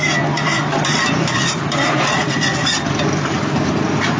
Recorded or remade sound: remade